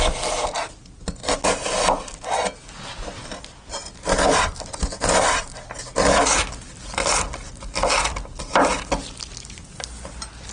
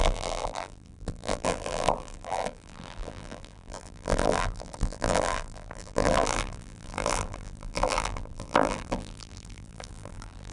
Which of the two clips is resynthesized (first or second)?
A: second